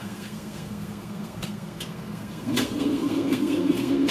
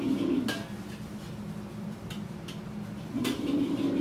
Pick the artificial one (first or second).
first